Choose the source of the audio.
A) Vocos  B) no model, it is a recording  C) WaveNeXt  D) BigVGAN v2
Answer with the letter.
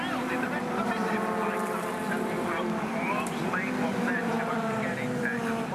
D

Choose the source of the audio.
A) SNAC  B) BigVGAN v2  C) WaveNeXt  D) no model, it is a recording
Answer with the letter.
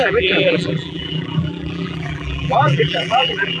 B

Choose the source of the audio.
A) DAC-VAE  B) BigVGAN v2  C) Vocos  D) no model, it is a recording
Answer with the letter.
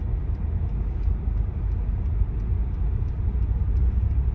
D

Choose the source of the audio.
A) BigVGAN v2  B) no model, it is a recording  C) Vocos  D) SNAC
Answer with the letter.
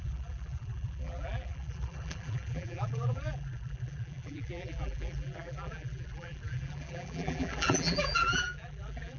A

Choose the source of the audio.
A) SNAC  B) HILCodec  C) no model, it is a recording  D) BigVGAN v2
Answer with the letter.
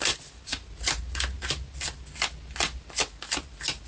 C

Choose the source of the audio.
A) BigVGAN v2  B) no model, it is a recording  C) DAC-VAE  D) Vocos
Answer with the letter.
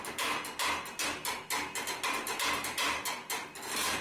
B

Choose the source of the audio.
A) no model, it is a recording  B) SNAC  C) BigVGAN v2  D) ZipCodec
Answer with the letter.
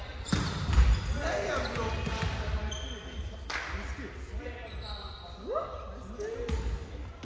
A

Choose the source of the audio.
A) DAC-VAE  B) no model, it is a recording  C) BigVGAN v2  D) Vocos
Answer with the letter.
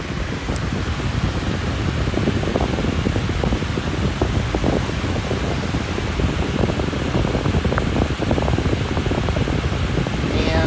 B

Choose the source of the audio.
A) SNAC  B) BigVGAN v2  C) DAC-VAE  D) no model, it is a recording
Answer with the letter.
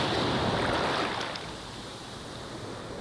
D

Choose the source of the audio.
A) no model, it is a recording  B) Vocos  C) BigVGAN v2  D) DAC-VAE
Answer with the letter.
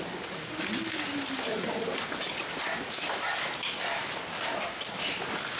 A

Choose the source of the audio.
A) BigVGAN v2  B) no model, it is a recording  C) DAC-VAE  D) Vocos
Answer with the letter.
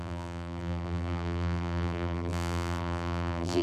A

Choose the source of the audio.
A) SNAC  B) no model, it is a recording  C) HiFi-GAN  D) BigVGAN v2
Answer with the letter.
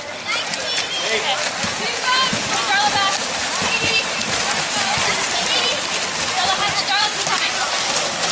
B